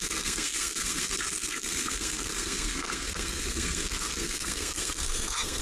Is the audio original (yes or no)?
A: no